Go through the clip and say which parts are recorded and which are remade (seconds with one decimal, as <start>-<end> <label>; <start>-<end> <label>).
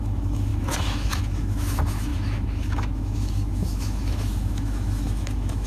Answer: 0.0-5.7 remade